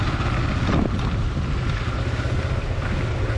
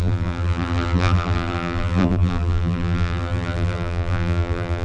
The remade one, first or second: second